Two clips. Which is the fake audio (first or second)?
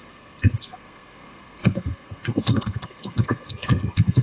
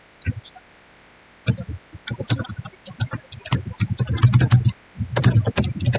first